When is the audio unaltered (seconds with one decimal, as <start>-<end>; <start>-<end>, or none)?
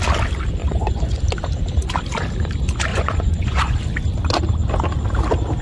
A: 0.0-0.6; 1.2-2.9; 3.8-5.6